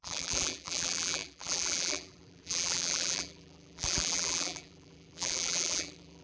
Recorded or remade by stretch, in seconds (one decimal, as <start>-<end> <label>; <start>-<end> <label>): 0.0-6.2 remade